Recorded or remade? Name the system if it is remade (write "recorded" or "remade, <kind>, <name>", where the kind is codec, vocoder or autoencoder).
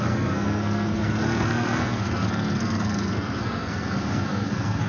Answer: remade, codec, SNAC